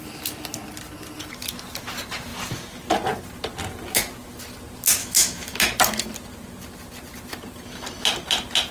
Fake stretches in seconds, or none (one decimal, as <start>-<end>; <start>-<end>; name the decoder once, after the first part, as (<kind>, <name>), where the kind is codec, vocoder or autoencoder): 5.0-5.5 (autoencoder, DAC-VAE)